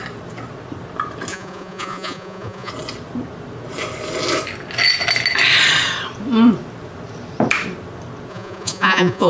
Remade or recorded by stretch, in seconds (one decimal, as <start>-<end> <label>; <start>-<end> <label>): 0.0-1.3 recorded; 1.3-2.7 remade; 2.7-8.3 recorded; 8.3-9.3 remade